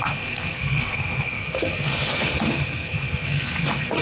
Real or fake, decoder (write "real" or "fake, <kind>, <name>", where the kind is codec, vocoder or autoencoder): fake, codec, SNAC